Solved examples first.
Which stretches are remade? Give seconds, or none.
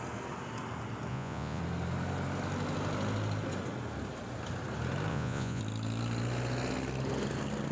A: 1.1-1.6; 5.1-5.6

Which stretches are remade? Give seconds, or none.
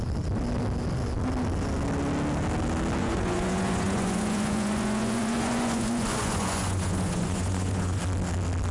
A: 3.0-8.0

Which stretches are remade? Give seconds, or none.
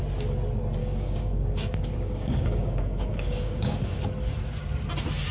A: 0.8-4.0